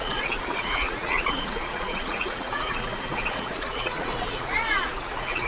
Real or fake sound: fake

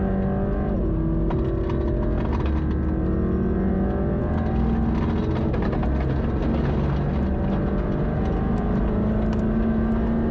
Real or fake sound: real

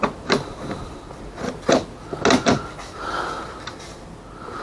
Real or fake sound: real